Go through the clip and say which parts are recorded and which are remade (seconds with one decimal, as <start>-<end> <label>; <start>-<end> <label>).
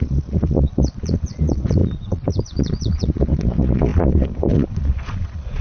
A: 0.0-5.6 remade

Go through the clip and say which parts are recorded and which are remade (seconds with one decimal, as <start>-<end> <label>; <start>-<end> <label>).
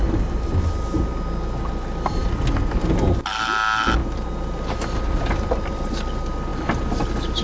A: 0.0-4.0 recorded; 4.0-4.6 remade; 4.6-7.4 recorded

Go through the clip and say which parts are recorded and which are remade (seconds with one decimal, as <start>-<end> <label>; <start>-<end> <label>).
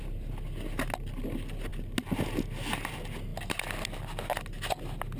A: 0.0-5.2 recorded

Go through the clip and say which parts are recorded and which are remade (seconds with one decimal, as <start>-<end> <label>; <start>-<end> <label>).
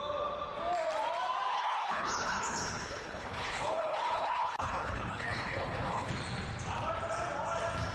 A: 0.0-1.5 recorded; 1.5-6.1 remade; 6.1-7.9 recorded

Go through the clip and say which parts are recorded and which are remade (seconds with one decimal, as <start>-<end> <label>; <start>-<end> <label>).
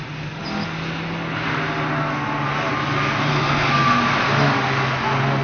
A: 0.0-3.3 recorded; 3.3-4.0 remade; 4.0-5.4 recorded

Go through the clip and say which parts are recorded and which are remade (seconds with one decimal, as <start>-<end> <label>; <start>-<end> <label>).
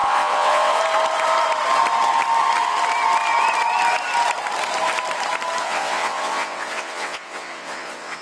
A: 0.0-0.8 remade; 0.8-5.6 recorded; 5.6-8.2 remade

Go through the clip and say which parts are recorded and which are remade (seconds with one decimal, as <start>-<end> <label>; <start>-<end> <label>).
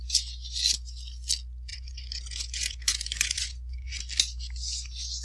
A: 0.0-1.7 recorded; 1.7-4.0 remade; 4.0-5.2 recorded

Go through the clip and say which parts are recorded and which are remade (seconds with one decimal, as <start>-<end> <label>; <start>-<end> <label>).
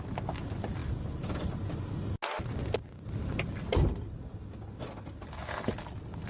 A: 0.0-6.3 recorded